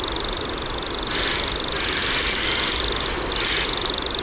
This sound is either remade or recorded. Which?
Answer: remade